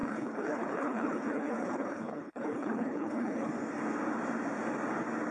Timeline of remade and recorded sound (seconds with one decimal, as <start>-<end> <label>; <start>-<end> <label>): 0.0-3.5 remade; 3.5-5.3 recorded